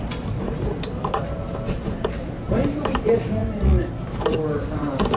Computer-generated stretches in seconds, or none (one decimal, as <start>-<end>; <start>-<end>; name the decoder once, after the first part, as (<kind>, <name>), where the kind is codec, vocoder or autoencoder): 0.0-3.4 (vocoder, BigVGAN v2); 4.7-5.2